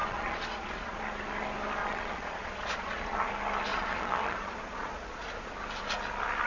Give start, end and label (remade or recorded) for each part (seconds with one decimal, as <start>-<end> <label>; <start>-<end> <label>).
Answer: 0.0-1.0 remade; 1.0-1.8 recorded; 1.8-3.3 remade; 3.3-3.7 recorded; 3.7-5.5 remade; 5.5-6.5 recorded